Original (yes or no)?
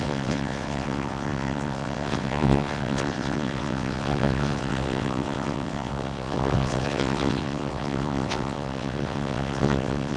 no